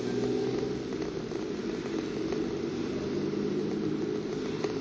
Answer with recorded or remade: recorded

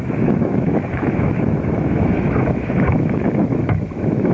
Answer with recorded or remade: remade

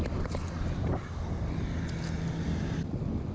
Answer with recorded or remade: recorded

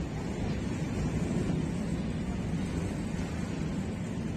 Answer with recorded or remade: recorded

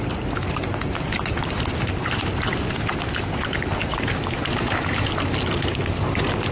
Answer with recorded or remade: recorded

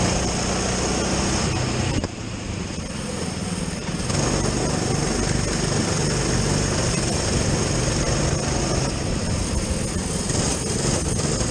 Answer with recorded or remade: recorded